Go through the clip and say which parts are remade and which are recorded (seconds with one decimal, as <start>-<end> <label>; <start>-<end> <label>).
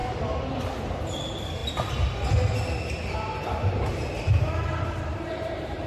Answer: 0.0-1.0 remade; 1.0-3.9 recorded; 3.9-5.9 remade